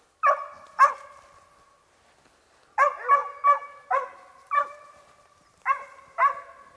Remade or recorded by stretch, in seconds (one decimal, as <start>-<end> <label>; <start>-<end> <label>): 0.0-3.2 recorded; 3.2-6.3 remade; 6.3-6.8 recorded